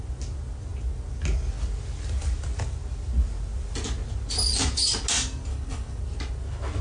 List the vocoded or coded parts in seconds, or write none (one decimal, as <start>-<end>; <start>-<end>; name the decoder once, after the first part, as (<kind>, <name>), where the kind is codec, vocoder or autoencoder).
5.5-6.0 (codec, HILCodec)